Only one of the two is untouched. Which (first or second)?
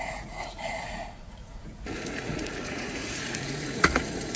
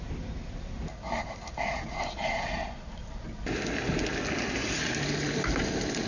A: second